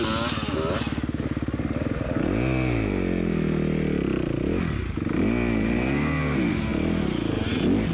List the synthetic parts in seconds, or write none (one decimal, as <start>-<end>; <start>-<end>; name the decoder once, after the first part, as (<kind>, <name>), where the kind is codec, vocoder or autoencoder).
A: none